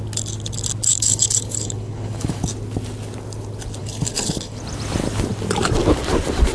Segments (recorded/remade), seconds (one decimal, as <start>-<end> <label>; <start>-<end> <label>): 0.0-0.9 recorded; 0.9-2.4 remade; 2.4-3.8 recorded; 3.8-4.6 remade; 4.6-6.5 recorded